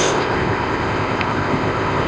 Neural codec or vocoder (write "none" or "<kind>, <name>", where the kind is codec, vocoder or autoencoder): codec, ZipCodec